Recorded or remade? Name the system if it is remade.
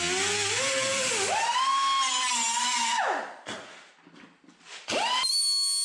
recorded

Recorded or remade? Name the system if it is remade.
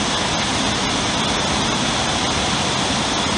recorded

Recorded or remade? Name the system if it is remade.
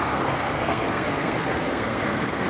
remade, codec, SNAC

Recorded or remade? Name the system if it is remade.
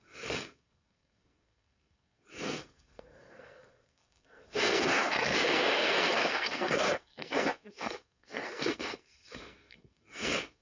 remade, codec, SNAC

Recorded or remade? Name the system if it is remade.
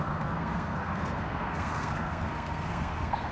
remade, codec, SNAC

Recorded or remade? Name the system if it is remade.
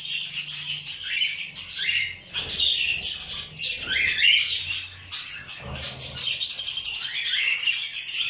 recorded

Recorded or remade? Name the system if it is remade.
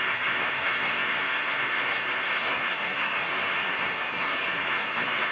remade, codec, SNAC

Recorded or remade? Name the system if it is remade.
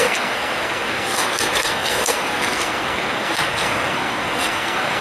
remade, codec, SNAC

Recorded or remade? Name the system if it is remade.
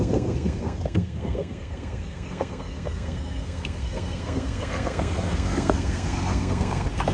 remade, codec, SNAC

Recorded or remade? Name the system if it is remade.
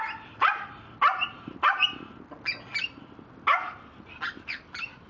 recorded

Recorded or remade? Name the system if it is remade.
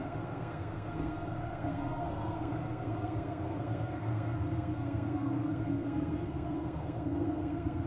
remade, codec, SNAC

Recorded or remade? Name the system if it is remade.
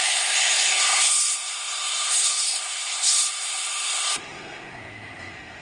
remade, codec, SNAC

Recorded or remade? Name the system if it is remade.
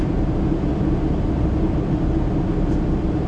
recorded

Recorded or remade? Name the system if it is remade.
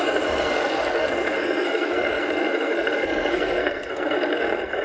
remade, codec, SNAC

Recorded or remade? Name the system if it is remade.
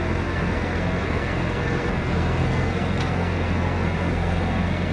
remade, codec, SNAC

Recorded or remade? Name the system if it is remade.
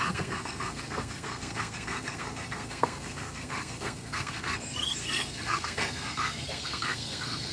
remade, codec, SNAC